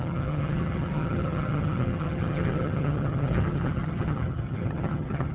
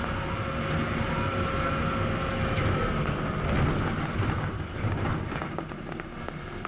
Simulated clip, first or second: first